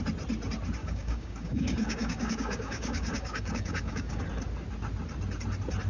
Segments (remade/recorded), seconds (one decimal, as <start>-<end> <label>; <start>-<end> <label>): 0.0-0.8 recorded; 0.8-4.3 remade; 4.3-5.9 recorded